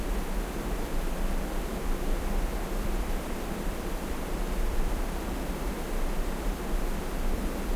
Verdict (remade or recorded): remade